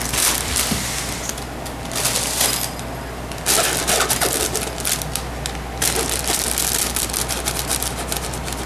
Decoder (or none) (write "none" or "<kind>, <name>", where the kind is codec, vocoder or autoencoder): none